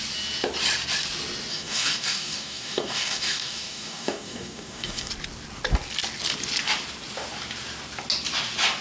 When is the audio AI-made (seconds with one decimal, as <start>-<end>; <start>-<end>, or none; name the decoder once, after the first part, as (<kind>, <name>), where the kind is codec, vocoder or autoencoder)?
1.5-5.1 (codec, DAC)